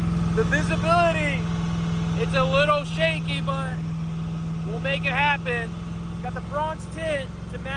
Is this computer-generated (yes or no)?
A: no